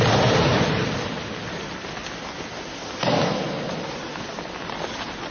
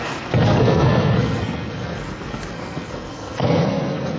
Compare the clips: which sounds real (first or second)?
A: first